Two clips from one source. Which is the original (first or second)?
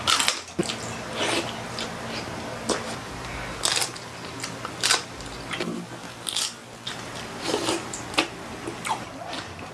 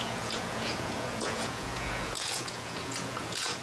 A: first